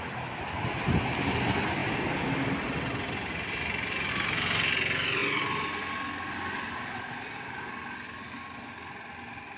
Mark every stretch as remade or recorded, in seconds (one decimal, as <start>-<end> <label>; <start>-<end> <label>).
0.0-1.8 recorded; 1.8-4.1 remade; 4.1-9.6 recorded